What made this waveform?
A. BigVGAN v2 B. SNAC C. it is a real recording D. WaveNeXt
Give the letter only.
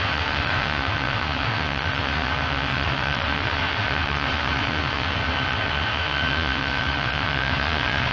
D